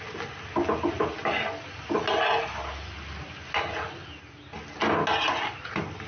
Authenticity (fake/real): real